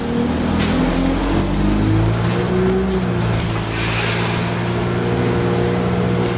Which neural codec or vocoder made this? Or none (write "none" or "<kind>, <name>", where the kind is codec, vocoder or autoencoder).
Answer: none